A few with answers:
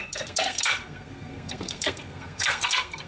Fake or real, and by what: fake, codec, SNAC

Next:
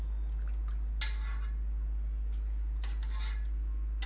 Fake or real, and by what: real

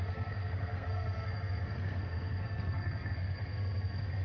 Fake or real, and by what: fake, codec, SNAC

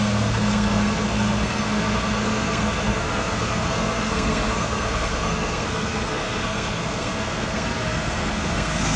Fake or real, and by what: fake, codec, SNAC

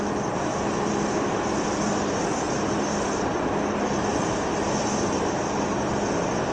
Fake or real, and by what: real